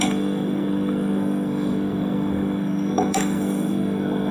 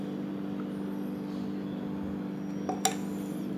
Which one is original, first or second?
second